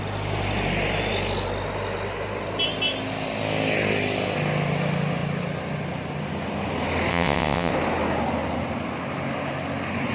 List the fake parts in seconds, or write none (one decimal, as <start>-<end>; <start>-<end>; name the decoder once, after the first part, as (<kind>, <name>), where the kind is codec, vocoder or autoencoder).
7.1-7.7 (vocoder, WaveNeXt)